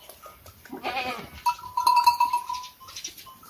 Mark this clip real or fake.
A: real